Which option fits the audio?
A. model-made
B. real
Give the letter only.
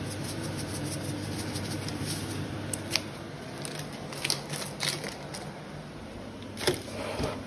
B